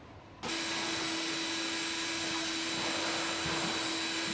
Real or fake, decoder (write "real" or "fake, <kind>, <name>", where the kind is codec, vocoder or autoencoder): real